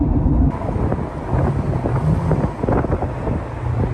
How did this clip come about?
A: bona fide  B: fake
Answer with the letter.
A